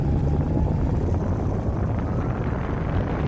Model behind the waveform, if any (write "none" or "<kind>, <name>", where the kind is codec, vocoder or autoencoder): vocoder, BigVGAN v2